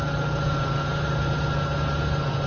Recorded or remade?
recorded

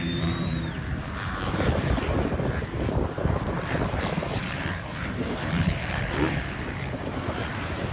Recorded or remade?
remade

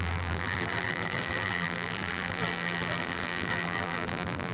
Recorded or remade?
remade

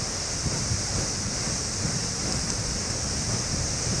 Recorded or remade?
remade